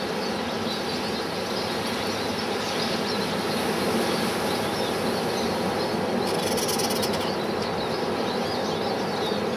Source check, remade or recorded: recorded